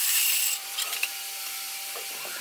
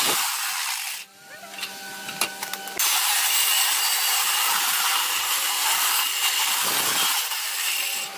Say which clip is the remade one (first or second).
first